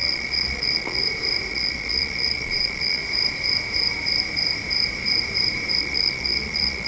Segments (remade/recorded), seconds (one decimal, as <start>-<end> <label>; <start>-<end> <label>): 0.0-1.0 remade; 1.0-1.5 recorded; 1.5-3.0 remade; 3.0-5.8 recorded; 5.8-6.9 remade